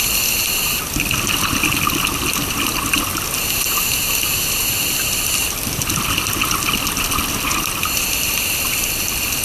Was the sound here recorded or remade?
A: recorded